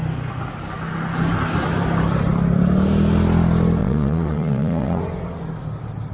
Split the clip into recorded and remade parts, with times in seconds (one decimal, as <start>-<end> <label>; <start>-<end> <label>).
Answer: 0.0-3.8 recorded; 3.8-5.0 remade; 5.0-6.1 recorded